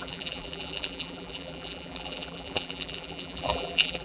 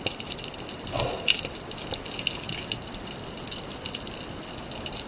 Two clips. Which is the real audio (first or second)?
second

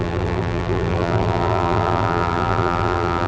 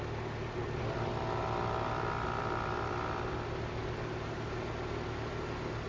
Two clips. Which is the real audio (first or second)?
second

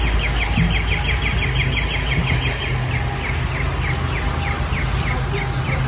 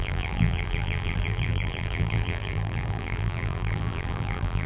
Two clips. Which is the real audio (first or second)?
first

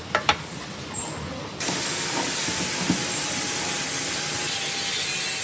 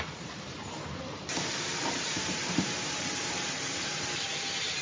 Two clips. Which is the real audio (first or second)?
first